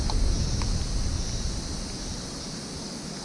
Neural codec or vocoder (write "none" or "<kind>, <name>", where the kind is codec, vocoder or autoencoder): none